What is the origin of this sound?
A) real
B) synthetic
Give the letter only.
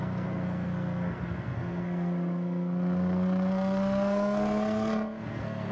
B